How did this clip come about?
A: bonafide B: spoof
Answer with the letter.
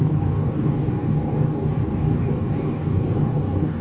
B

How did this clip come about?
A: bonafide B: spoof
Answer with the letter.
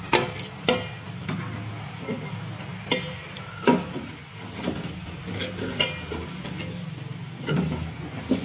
A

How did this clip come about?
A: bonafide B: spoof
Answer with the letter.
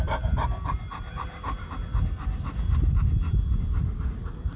A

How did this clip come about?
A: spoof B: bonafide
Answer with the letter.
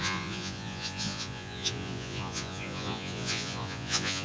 A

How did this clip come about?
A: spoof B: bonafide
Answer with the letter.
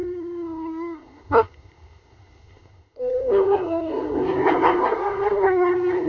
A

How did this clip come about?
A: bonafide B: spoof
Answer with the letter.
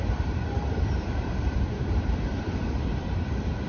B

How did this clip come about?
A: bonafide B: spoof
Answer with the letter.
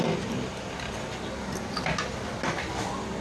A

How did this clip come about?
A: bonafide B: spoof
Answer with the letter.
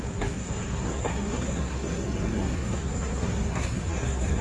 B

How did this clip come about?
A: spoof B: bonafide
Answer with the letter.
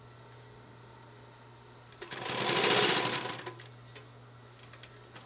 B